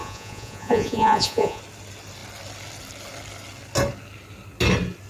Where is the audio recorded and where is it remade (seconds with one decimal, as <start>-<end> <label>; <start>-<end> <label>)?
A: 0.0-1.6 remade; 1.6-5.1 recorded